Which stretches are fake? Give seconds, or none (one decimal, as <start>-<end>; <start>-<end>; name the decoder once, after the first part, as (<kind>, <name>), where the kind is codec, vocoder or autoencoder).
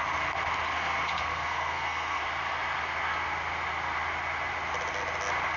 0.7-2.2 (codec, SNAC)